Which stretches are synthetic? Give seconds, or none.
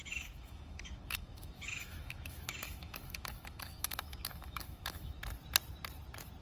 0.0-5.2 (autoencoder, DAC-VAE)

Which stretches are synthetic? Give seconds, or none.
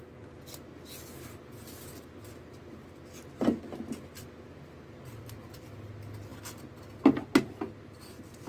none